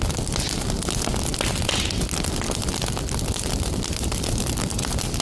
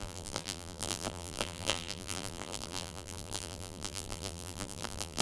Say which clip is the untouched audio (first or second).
first